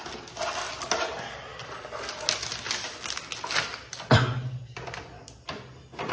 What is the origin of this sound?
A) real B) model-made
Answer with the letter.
A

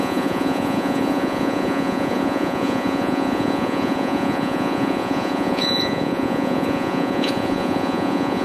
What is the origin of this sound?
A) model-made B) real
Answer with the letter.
A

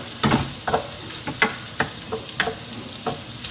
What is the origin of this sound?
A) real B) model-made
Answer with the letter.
A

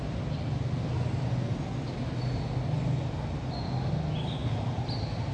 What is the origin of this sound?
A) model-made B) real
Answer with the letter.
B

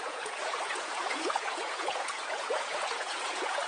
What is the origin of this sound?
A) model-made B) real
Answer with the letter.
A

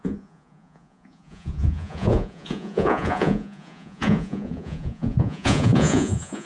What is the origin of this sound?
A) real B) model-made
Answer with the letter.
B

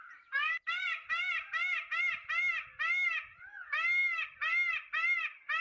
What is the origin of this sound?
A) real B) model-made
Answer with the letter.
A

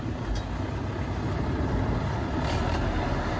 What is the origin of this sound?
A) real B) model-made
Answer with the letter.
A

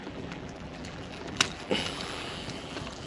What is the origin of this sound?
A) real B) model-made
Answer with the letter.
B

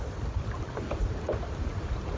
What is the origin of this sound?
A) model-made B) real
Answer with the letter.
B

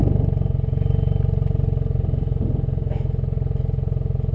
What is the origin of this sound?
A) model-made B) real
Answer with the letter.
B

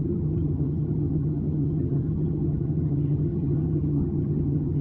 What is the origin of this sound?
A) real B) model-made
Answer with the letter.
B